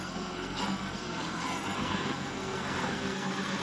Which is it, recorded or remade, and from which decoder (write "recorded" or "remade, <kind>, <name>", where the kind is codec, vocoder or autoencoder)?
remade, codec, SNAC